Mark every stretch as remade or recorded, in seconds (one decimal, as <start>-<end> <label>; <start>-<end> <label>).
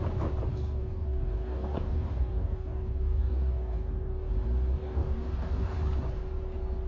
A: 0.0-0.5 recorded; 0.5-4.3 remade; 4.3-4.7 recorded; 4.7-5.8 remade; 5.8-6.9 recorded